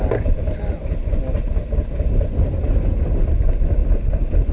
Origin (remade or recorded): recorded